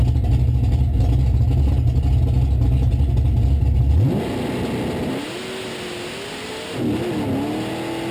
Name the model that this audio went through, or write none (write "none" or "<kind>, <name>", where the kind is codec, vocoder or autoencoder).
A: none